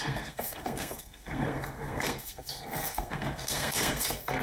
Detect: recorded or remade remade